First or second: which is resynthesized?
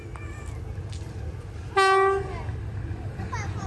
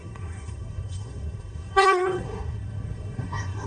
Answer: second